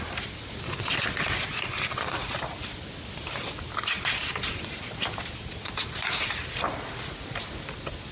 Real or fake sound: real